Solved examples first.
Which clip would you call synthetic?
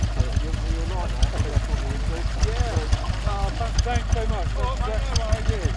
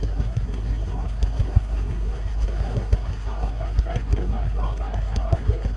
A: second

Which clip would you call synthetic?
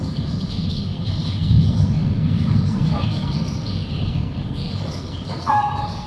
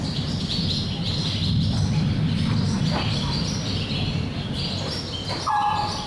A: first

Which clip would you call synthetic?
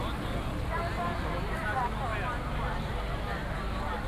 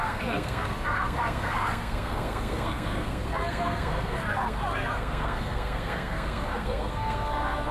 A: second